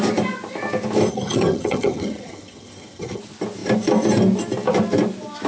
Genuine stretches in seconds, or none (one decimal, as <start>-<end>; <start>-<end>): 0.0-1.1; 3.2-5.5